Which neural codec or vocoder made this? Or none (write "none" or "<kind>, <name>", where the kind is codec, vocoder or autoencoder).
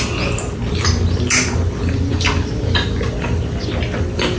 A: none